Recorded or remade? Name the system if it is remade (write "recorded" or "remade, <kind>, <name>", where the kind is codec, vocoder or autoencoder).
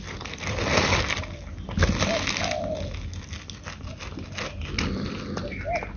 recorded